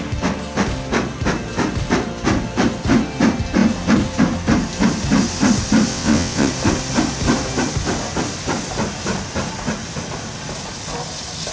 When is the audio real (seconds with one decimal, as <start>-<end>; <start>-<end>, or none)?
0.0-5.9; 6.5-11.5